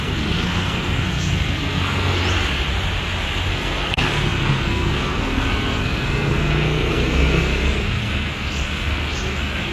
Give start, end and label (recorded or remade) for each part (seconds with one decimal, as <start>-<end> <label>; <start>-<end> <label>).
0.0-2.2 remade; 2.2-3.5 recorded; 3.5-9.7 remade